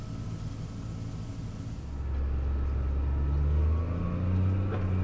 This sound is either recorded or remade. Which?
recorded